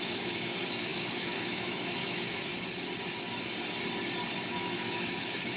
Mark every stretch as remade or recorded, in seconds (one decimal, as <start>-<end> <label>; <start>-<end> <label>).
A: 0.0-2.5 remade; 2.5-4.3 recorded; 4.3-5.6 remade